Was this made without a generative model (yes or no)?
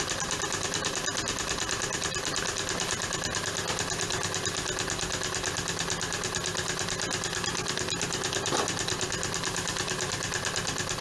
yes